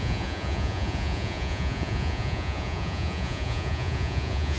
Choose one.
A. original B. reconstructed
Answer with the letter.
B